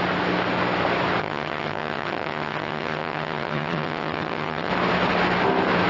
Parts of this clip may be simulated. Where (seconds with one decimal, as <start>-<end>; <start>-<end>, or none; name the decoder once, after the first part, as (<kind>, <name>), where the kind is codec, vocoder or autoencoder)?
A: 1.2-4.7 (vocoder, HiFi-GAN)

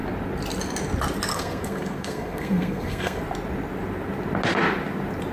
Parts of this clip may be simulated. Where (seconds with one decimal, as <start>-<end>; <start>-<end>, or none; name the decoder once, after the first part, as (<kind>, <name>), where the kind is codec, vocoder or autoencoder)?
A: 1.3-3.2 (codec, SNAC)

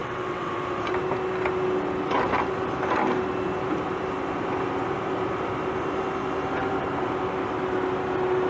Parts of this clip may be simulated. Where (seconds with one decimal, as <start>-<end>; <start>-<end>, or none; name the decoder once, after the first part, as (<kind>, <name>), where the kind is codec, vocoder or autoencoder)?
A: 0.0-0.5 (vocoder, WaveNeXt)